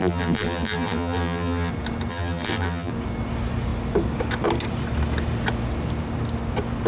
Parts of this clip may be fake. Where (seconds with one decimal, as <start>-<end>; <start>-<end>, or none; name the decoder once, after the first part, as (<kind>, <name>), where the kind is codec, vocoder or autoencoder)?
0.0-1.7 (vocoder, BigVGAN v2); 2.1-2.9